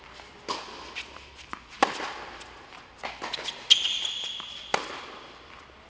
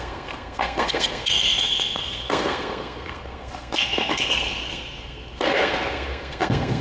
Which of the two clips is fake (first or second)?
second